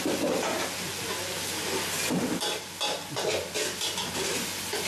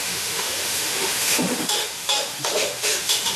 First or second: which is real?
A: first